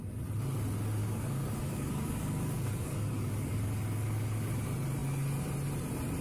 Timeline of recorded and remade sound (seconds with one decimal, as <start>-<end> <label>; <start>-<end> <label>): 0.0-1.0 recorded; 1.0-4.5 remade; 4.5-6.2 recorded